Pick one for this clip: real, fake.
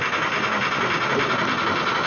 real